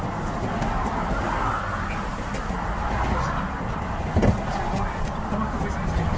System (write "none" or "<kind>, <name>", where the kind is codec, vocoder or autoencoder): none